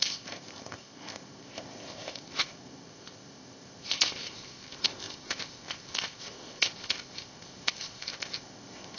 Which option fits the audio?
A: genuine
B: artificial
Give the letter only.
B